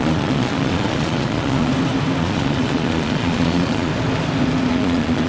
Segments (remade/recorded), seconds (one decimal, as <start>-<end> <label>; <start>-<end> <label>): 0.0-1.7 remade; 1.7-2.2 recorded; 2.2-3.9 remade; 3.9-4.7 recorded; 4.7-5.3 remade